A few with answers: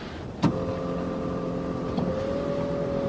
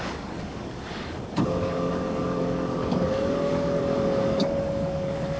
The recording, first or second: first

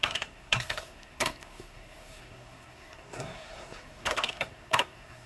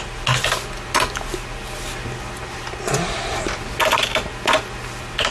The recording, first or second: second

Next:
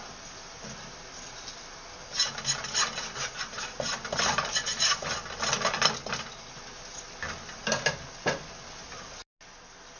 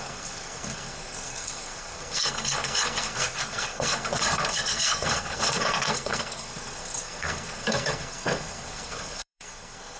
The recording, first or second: first